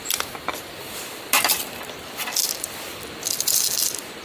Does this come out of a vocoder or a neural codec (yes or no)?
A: no